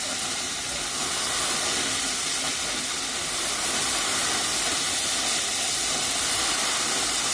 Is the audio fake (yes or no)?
no